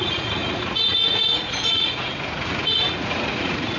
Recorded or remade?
remade